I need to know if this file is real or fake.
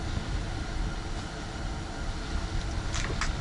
real